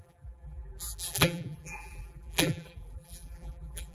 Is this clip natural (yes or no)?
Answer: no